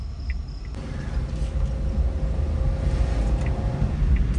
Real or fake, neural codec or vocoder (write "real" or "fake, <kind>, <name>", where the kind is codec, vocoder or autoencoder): real